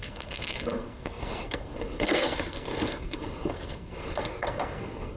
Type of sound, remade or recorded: remade